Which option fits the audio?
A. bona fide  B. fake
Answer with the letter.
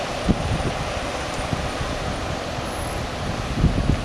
B